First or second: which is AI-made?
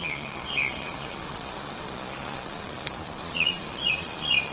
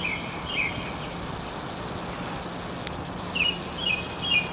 first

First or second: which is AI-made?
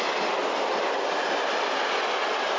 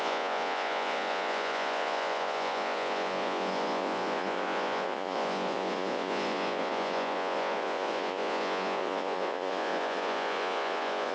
second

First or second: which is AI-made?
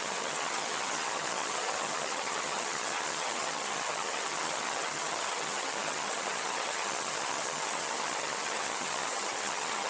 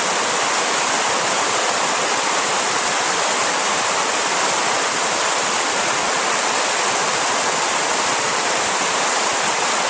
first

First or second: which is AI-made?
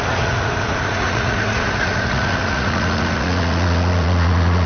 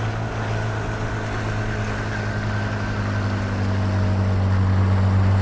first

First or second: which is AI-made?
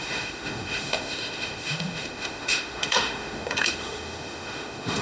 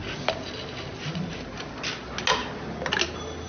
first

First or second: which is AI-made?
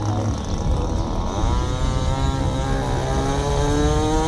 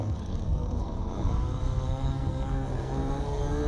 second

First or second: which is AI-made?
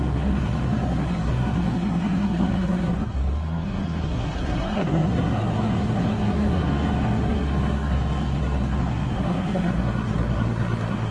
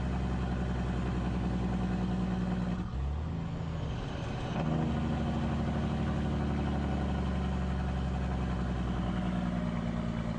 first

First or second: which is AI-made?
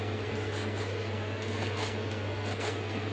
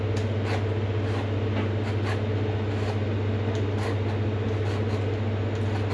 first